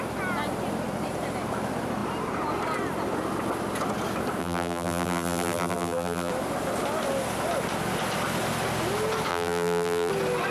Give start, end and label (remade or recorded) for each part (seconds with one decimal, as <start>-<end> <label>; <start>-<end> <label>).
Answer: 0.0-4.4 recorded; 4.4-6.3 remade; 6.3-9.3 recorded; 9.3-10.1 remade; 10.1-10.5 recorded